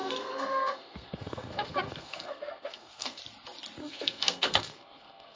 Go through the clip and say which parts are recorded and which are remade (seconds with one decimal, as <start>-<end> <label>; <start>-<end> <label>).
0.0-3.2 remade; 3.2-3.8 recorded; 3.8-5.4 remade